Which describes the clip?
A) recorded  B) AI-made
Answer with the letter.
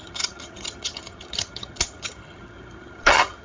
B